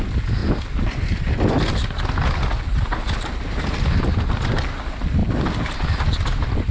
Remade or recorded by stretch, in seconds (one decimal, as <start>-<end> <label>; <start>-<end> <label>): 0.0-6.7 recorded